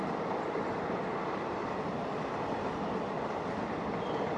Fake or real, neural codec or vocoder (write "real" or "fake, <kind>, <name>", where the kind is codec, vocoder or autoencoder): real